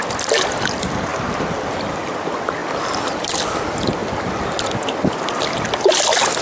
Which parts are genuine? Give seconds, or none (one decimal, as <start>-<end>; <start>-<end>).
0.0-6.4